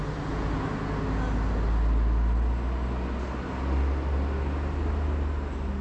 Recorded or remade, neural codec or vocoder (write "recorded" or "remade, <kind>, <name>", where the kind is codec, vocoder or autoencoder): recorded